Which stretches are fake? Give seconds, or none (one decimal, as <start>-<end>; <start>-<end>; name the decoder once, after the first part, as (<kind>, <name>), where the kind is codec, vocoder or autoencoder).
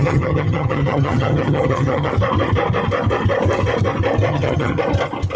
0.0-2.1 (vocoder, HiFi-GAN); 4.3-4.8